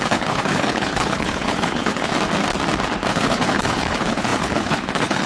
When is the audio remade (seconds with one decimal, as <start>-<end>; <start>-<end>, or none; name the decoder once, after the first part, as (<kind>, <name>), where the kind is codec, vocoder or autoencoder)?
0.0-2.1 (codec, HILCodec); 3.1-5.3

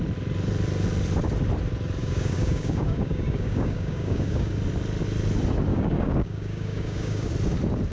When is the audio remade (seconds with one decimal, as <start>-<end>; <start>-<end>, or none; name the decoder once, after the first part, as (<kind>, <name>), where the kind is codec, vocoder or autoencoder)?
2.0-4.5 (codec, DAC); 5.7-7.3